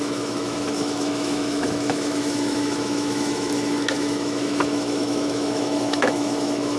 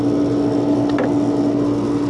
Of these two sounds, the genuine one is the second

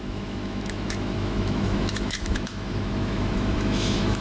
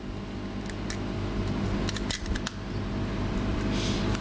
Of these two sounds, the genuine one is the second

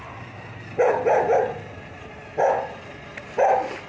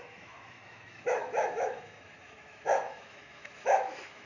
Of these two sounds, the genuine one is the first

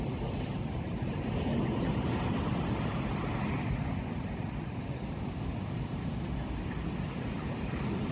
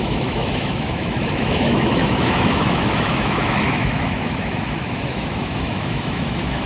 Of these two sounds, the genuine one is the first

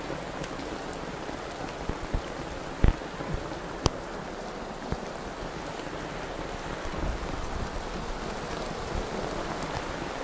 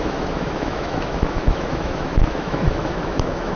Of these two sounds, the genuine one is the first